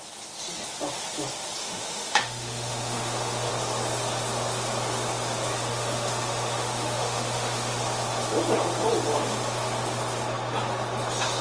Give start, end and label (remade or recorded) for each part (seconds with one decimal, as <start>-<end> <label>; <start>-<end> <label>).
0.0-1.6 recorded; 1.6-3.5 remade; 3.5-5.7 recorded; 5.7-7.8 remade; 7.8-11.4 recorded